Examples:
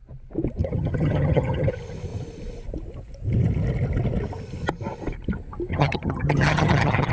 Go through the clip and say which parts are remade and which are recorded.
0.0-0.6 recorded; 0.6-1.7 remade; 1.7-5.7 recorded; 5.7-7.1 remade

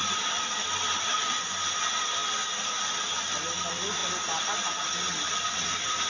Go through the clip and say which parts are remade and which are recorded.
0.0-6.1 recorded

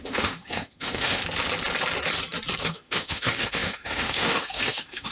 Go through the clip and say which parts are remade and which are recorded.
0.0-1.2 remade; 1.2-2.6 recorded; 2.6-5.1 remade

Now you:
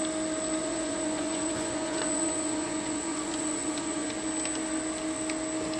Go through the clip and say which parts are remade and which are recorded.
0.0-0.6 recorded; 0.6-4.1 remade; 4.1-5.8 recorded

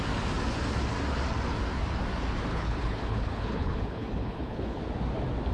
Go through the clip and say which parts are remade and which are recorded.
0.0-2.5 recorded; 2.5-4.8 remade; 4.8-5.5 recorded

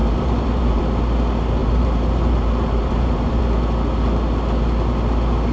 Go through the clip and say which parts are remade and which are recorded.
0.0-0.8 remade; 0.8-1.6 recorded; 1.6-3.4 remade; 3.4-5.5 recorded

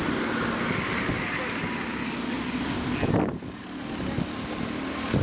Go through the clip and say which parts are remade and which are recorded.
0.0-5.2 recorded